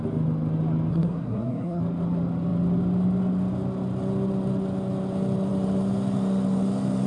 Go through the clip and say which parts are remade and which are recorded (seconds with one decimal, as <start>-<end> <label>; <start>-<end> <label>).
0.0-0.9 recorded; 0.9-1.8 remade; 1.8-7.1 recorded